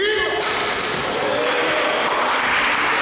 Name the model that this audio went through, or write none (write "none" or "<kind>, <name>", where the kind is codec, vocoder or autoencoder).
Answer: none